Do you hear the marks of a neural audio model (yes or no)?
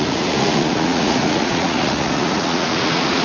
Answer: yes